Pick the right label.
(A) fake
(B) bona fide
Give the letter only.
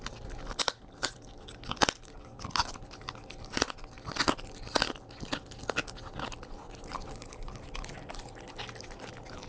B